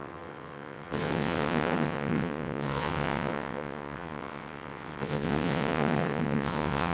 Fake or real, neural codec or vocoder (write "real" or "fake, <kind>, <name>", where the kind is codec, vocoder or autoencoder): fake, vocoder, WaveNeXt